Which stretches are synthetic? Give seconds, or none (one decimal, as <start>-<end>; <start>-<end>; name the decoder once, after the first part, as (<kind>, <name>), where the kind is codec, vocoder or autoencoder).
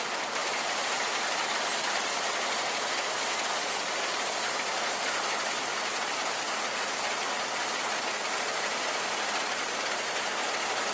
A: none